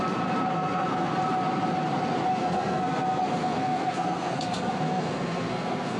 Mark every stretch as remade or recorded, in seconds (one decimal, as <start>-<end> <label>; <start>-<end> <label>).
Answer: 0.0-0.5 recorded; 0.5-1.1 remade; 1.1-2.3 recorded; 2.3-6.0 remade